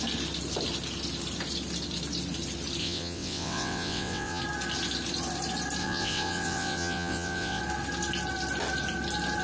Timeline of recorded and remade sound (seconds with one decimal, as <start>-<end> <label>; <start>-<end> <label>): 0.0-2.8 recorded; 2.8-4.4 remade; 4.4-5.8 recorded; 5.8-7.6 remade; 7.6-9.4 recorded